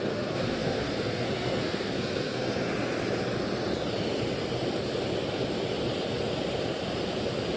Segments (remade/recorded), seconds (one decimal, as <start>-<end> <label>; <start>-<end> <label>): 0.0-2.7 remade; 2.7-7.6 recorded